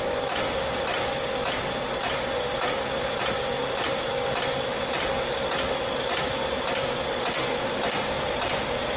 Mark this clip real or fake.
real